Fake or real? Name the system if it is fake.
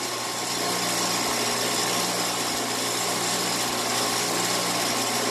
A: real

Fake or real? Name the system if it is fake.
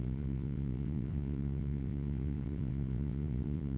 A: fake, vocoder, WaveNeXt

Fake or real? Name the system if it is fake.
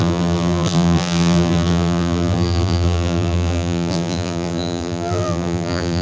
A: fake, vocoder, BigVGAN v2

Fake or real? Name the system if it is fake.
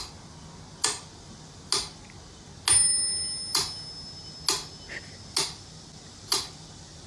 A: real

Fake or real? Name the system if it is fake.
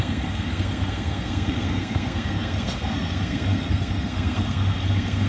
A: fake, codec, SNAC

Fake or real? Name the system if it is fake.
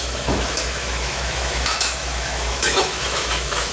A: fake, autoencoder, DAC-VAE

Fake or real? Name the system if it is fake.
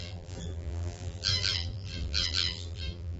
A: fake, vocoder, BigVGAN v2